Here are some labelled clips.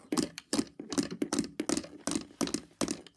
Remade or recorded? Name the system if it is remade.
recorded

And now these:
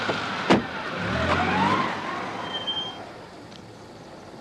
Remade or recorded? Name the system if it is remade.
recorded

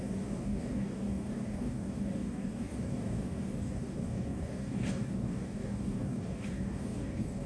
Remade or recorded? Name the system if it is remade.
remade, codec, DAC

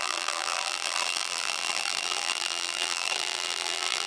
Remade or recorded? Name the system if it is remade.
remade, vocoder, BigVGAN v2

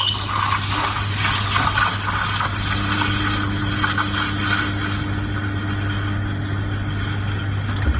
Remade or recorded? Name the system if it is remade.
recorded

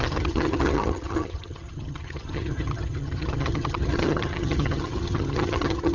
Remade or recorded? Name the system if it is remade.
remade, vocoder, HiFi-GAN